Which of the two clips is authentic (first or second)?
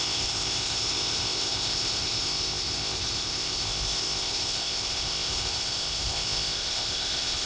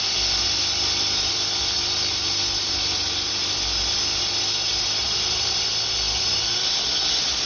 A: second